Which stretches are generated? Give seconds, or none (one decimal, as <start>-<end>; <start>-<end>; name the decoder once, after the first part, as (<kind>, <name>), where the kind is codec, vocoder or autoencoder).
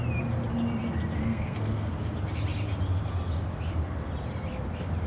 1.2-1.9 (codec, SNAC)